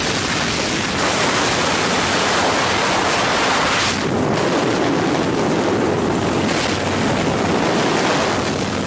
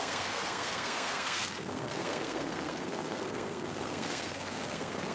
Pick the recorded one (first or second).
first